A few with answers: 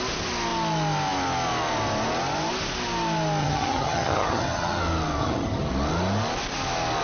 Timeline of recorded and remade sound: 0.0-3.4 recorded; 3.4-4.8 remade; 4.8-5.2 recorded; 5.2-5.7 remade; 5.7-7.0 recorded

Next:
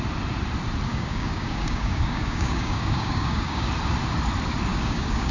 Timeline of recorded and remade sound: 0.0-0.9 recorded; 0.9-3.7 remade; 3.7-4.7 recorded; 4.7-5.3 remade

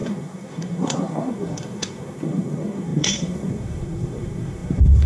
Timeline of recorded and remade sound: 0.0-5.1 remade

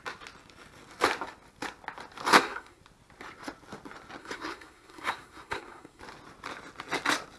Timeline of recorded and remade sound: 0.0-2.3 recorded; 2.3-2.8 remade; 2.8-4.2 recorded; 4.2-6.0 remade; 6.0-7.4 recorded